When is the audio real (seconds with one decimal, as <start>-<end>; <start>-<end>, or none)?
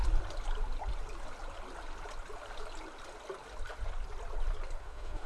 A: 0.0-4.8